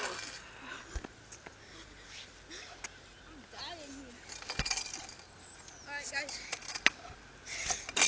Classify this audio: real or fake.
real